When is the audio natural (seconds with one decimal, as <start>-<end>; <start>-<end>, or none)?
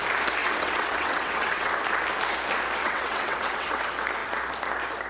0.0-0.4; 1.7-2.8; 3.8-5.1